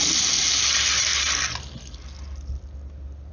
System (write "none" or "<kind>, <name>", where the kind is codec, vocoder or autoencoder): none